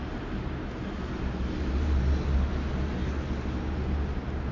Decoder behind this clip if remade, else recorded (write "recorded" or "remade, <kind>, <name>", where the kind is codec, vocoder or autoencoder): recorded